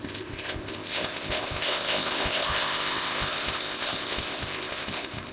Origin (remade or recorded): remade